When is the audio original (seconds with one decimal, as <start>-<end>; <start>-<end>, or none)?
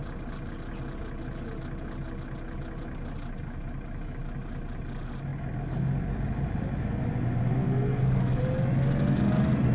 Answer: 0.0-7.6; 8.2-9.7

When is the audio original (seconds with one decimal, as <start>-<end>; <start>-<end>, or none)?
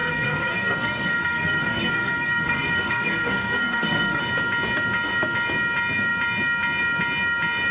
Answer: 4.2-7.7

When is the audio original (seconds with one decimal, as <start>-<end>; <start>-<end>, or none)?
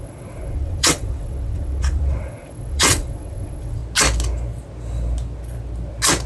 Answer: 3.8-6.3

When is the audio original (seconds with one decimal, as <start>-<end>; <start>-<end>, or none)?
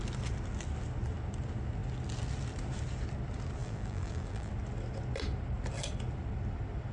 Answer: 0.0-3.6; 4.5-6.9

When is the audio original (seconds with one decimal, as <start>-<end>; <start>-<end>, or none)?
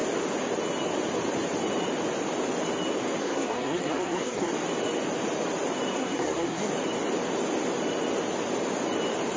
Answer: 0.0-3.2; 4.5-5.9; 6.7-9.4